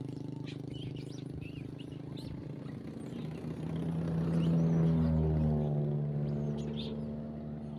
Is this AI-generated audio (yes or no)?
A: no